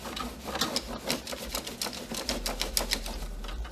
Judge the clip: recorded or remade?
recorded